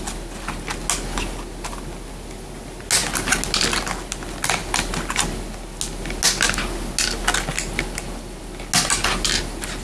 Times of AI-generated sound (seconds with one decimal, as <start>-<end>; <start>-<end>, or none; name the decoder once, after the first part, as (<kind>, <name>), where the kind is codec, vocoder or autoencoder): none